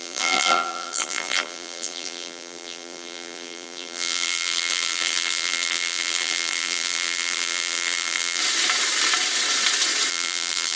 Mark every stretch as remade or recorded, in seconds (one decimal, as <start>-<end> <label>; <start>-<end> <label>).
0.0-8.4 remade; 8.4-10.1 recorded; 10.1-10.8 remade